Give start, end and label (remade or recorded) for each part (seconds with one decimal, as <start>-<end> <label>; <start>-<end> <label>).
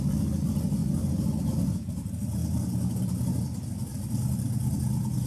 0.0-5.3 recorded